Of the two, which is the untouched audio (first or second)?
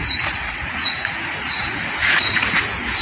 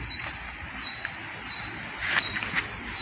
second